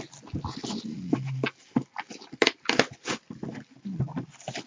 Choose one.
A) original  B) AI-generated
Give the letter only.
A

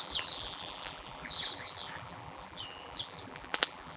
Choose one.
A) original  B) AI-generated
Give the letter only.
B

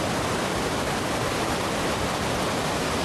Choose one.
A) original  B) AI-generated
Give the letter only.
A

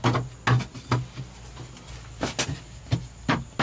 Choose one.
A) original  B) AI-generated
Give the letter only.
A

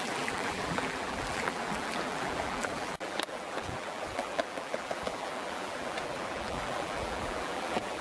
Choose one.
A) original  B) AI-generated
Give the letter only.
B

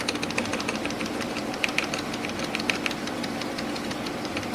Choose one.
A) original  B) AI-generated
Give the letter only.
B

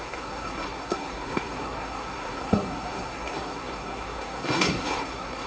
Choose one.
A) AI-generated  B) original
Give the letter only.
A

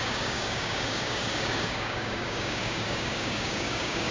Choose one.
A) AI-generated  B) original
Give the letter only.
A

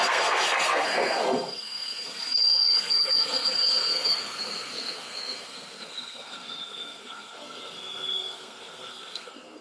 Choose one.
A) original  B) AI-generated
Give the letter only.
B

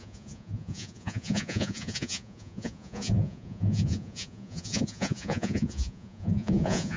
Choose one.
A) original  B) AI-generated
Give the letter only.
B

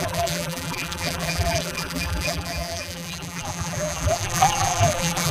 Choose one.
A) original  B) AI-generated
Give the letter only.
B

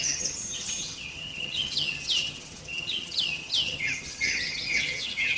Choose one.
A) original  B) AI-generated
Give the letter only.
B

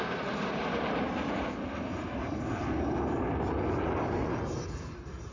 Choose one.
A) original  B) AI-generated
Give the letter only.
A